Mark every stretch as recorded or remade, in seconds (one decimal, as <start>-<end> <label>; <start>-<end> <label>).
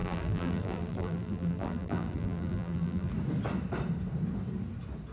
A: 0.0-3.1 remade; 3.1-5.1 recorded